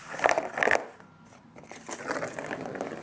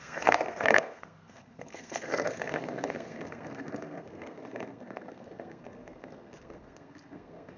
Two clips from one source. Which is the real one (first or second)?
first